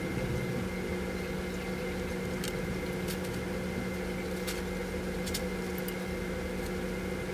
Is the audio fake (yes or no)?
no